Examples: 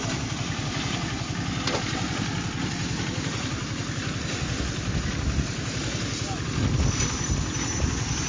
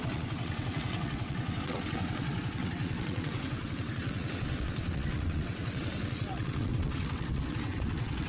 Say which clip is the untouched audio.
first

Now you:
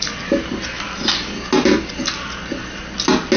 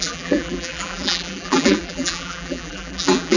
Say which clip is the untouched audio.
first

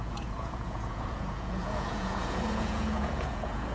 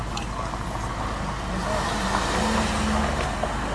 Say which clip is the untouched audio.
second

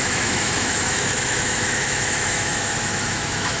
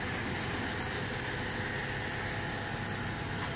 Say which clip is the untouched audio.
second